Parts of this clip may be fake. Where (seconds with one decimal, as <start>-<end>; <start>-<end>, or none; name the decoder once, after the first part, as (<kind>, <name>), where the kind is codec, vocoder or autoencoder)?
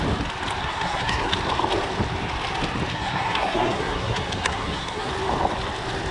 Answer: 0.6-1.3 (codec, SNAC); 2.9-5.1